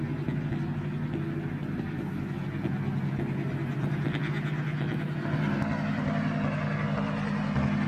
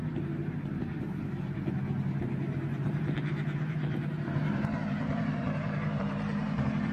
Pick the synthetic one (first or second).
second